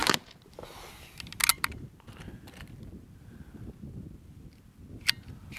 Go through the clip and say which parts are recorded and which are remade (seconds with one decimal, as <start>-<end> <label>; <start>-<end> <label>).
0.0-5.6 recorded